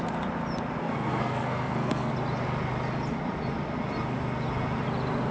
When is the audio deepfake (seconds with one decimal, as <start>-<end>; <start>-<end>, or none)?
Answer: 0.8-2.1